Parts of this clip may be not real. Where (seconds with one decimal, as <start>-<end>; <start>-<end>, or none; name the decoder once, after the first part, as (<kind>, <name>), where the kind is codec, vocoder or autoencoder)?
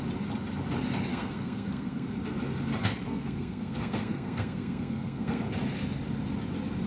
1.1-2.1 (codec, SNAC); 2.8-5.4